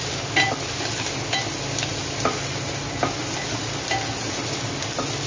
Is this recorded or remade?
recorded